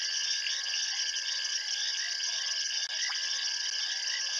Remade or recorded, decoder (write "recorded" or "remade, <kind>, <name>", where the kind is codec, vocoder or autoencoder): recorded